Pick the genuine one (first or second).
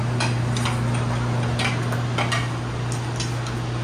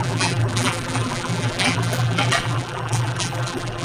first